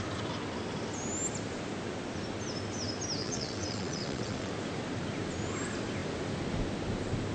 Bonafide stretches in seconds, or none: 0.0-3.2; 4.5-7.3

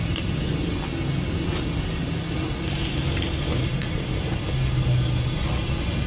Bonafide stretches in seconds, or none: 0.0-6.1

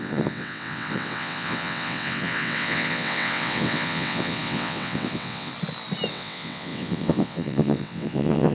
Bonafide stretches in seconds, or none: 5.5-6.1